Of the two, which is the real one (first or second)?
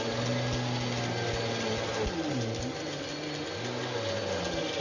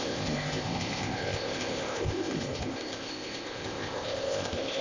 first